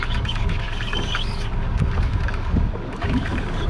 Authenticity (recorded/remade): remade